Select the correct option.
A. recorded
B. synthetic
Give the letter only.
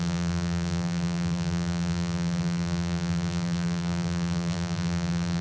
B